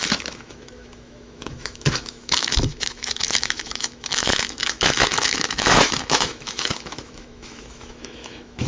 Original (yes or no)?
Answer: no